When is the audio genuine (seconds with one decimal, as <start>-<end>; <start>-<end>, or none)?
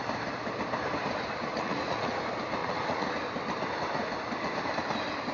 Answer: 0.0-1.5; 2.2-2.6; 3.1-5.3